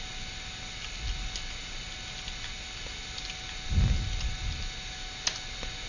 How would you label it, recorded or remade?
recorded